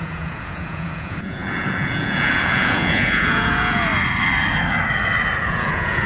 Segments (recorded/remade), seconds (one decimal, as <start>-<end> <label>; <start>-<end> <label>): 0.0-3.9 remade; 3.9-5.4 recorded; 5.4-6.1 remade